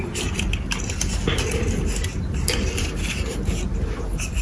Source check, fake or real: real